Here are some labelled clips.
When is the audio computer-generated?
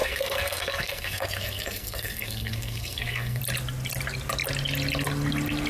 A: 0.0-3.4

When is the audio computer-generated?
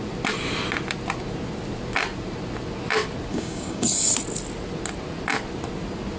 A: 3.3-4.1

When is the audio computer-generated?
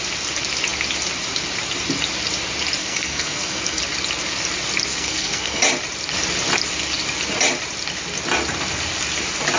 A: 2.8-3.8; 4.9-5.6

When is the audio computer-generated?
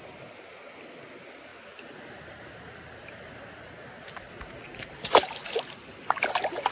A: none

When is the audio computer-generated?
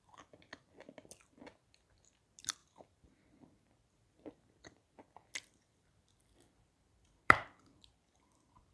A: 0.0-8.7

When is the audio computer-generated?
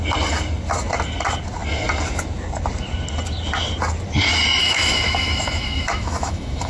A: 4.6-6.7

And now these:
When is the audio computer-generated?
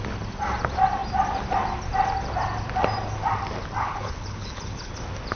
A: 3.8-4.9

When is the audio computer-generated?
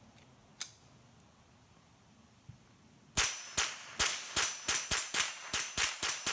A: none